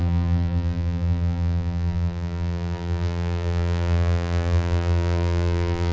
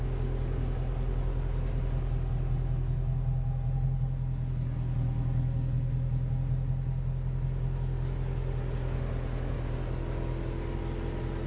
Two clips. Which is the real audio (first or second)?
second